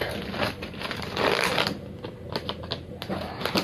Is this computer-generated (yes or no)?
no